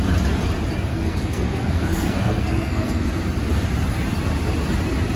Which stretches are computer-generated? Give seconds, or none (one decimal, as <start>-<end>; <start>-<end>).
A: 0.9-3.1